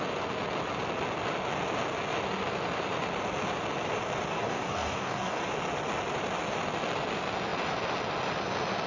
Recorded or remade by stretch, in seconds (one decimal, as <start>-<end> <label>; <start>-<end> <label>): 0.0-4.3 recorded; 4.3-5.4 remade; 5.4-8.9 recorded